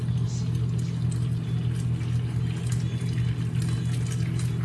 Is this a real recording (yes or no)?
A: yes